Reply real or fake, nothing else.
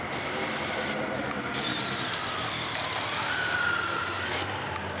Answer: real